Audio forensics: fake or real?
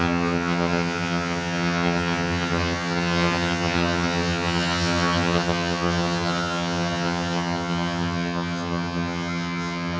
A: fake